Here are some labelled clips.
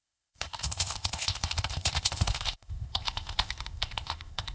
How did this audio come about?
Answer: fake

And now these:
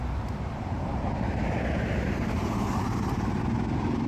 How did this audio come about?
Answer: fake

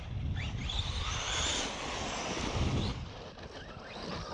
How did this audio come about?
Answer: real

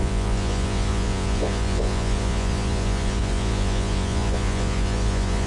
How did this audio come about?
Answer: fake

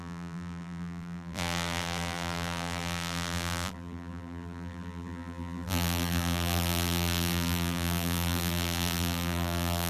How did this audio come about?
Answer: fake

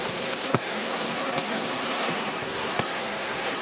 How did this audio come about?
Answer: fake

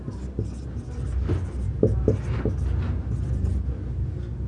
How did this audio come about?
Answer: real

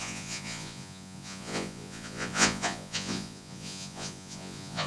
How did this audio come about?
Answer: fake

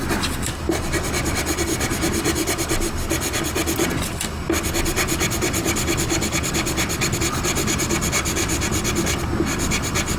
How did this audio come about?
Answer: real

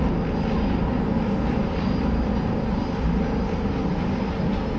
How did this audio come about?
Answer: real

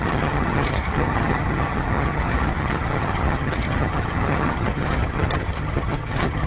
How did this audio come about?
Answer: fake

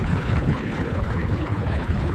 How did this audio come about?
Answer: fake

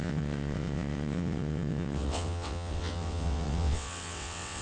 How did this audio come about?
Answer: fake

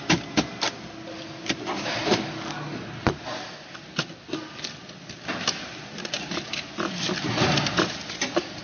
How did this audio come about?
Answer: real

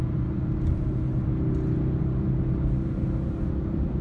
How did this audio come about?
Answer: real